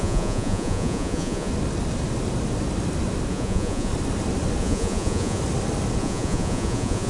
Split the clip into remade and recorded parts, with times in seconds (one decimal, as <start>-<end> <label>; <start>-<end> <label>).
0.0-1.5 remade; 1.5-3.3 recorded; 3.3-3.9 remade; 3.9-4.6 recorded; 4.6-5.4 remade; 5.4-6.0 recorded; 6.0-7.1 remade